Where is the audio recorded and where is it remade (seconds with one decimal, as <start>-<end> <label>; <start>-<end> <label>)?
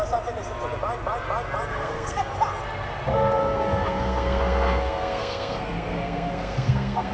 0.0-1.7 recorded; 1.7-2.2 remade; 2.2-3.4 recorded; 3.4-7.1 remade